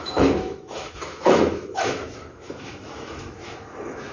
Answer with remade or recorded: remade